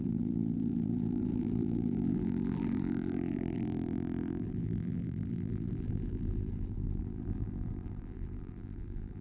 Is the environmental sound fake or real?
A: fake